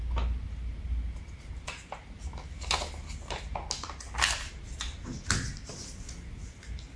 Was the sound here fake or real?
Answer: real